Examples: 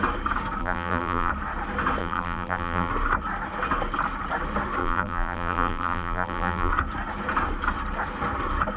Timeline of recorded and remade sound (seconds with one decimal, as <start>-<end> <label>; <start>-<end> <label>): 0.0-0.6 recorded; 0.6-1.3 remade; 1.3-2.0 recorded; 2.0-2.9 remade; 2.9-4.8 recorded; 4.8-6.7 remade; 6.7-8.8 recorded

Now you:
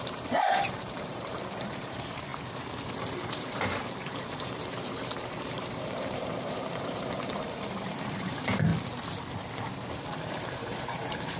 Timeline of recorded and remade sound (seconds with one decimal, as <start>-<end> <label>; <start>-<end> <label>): 0.0-2.3 remade; 2.3-3.0 recorded; 3.0-8.7 remade; 8.7-10.2 recorded; 10.2-11.4 remade

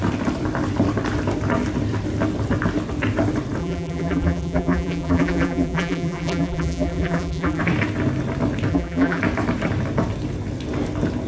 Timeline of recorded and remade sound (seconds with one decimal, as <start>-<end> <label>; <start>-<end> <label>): 0.0-3.6 recorded; 3.6-7.6 remade; 7.6-8.7 recorded; 8.7-9.2 remade; 9.2-11.3 recorded

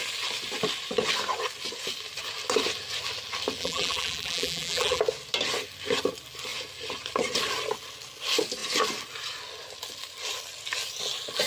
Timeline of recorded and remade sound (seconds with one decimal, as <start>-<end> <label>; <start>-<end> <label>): 0.0-3.6 recorded; 3.6-5.0 remade; 5.0-11.5 recorded

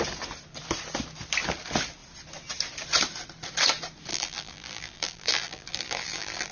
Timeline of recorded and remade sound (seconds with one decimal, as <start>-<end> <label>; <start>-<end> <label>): 0.0-4.1 recorded; 4.1-6.5 remade

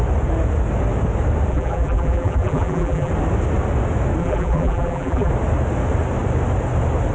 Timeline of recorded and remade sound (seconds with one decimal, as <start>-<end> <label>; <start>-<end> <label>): 0.0-1.5 recorded; 1.5-3.1 remade; 3.1-4.2 recorded; 4.2-5.3 remade; 5.3-7.1 recorded

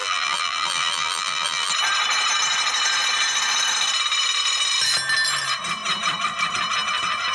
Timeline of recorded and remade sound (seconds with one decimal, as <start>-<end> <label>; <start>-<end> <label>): 0.0-1.7 remade; 1.7-7.3 recorded